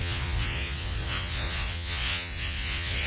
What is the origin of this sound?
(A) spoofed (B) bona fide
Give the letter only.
A